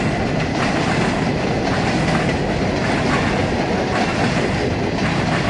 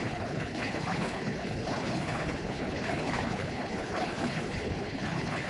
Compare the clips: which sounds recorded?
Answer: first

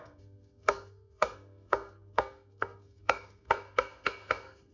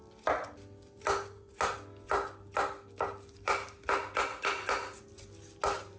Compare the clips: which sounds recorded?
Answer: second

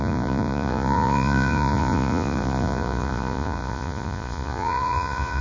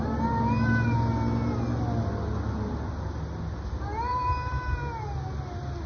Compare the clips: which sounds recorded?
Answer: second